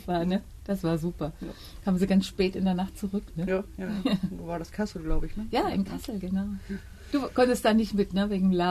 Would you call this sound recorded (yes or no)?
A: yes